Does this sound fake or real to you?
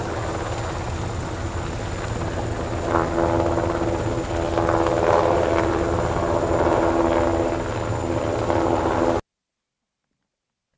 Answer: real